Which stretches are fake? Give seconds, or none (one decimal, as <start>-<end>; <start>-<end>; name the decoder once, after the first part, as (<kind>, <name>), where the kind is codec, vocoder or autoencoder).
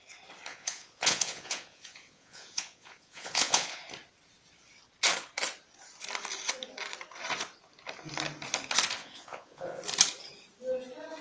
0.5-3.8 (vocoder, Vocos); 9.0-9.8